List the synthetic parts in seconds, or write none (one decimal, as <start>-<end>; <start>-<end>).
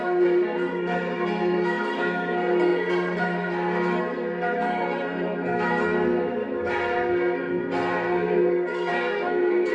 0.0-9.7